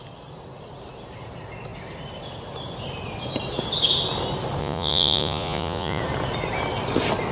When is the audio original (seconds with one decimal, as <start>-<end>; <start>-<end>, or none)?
0.0-4.6; 6.0-7.3